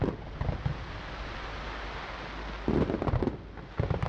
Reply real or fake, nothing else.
real